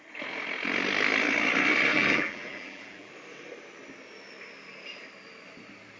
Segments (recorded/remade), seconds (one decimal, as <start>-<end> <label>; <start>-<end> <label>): 0.0-1.9 recorded; 1.9-3.1 remade; 3.1-6.0 recorded